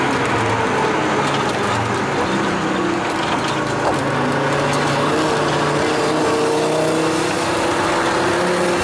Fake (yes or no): no